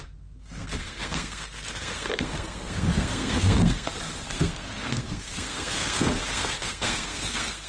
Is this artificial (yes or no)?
yes